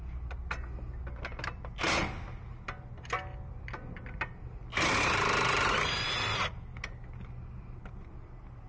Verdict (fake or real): real